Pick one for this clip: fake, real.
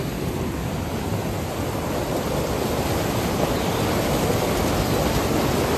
real